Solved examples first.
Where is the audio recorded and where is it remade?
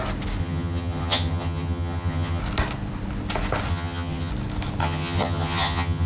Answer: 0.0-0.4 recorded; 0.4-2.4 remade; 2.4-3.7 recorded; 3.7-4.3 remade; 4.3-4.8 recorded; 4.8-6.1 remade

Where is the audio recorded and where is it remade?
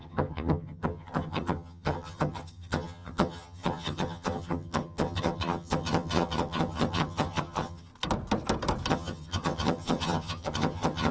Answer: 0.0-7.9 remade; 7.9-8.9 recorded; 8.9-11.1 remade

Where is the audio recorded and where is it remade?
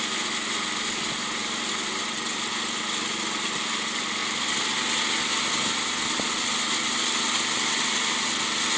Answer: 0.0-8.8 recorded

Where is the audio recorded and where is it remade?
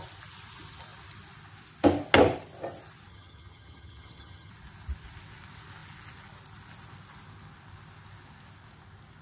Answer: 0.0-3.1 recorded; 3.1-4.5 remade; 4.5-9.2 recorded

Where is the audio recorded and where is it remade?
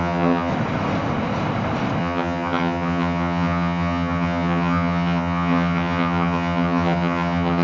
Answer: 0.0-0.5 remade; 0.5-2.0 recorded; 2.0-7.6 remade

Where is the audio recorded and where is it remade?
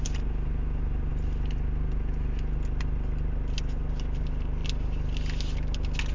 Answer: 0.0-6.1 recorded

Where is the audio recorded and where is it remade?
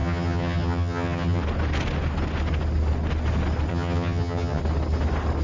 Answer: 0.0-1.4 remade; 1.4-3.7 recorded; 3.7-4.6 remade; 4.6-5.4 recorded